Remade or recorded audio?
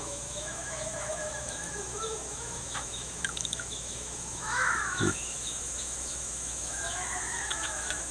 remade